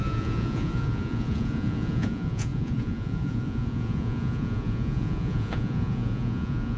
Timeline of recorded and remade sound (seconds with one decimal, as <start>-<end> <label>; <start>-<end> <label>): 0.0-6.8 remade